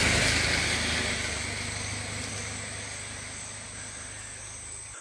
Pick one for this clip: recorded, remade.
recorded